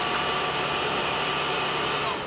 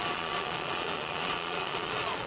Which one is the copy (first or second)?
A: second